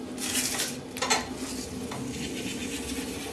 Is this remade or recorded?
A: recorded